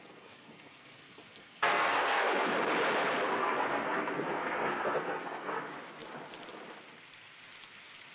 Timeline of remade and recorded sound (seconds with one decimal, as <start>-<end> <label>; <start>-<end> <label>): 0.0-2.5 remade; 2.5-3.4 recorded; 3.4-5.6 remade; 5.6-8.1 recorded